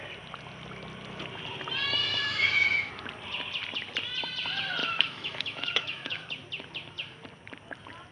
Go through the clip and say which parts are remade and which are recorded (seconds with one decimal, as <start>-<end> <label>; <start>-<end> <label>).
0.0-2.0 recorded; 2.0-2.9 remade; 2.9-4.8 recorded; 4.8-6.3 remade; 6.3-8.1 recorded